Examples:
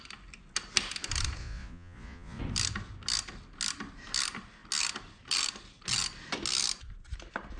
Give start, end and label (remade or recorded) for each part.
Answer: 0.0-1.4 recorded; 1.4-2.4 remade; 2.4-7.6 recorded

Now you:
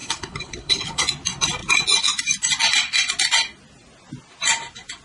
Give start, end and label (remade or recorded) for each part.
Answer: 0.0-1.0 remade; 1.0-5.0 recorded